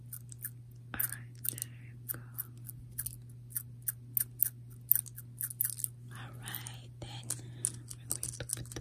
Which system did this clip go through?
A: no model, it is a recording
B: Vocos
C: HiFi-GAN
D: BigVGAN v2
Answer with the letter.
A